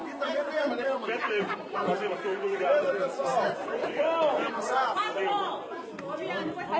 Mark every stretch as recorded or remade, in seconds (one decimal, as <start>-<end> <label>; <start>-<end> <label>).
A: 0.0-5.0 remade; 5.0-5.9 recorded; 5.9-6.8 remade